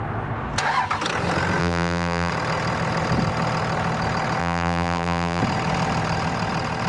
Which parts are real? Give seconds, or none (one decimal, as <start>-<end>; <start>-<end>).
0.0-1.6; 2.3-4.4; 5.4-6.9